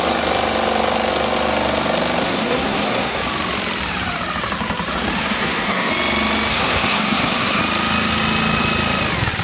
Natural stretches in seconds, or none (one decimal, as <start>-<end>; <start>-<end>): 0.0-2.2; 3.2-5.2; 5.9-6.5; 7.6-9.4